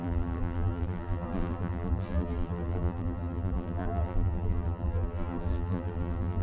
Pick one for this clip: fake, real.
fake